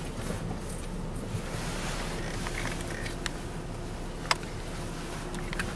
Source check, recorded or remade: recorded